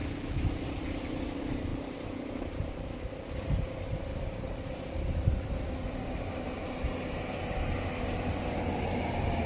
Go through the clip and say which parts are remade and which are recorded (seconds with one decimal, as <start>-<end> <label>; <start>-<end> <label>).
0.0-9.5 recorded